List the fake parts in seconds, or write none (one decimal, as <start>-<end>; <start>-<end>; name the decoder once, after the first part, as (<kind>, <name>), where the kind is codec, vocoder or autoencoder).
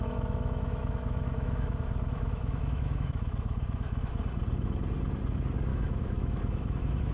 0.0-4.2 (autoencoder, DAC-VAE); 5.7-7.1